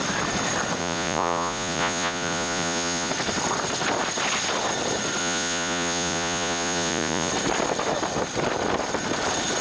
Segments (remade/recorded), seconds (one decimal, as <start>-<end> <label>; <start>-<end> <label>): 0.0-0.8 recorded; 0.8-3.1 remade; 3.1-5.2 recorded; 5.2-7.3 remade; 7.3-9.6 recorded